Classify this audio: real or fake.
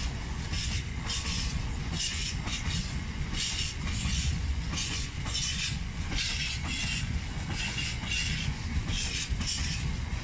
fake